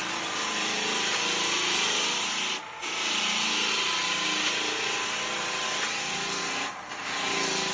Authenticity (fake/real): real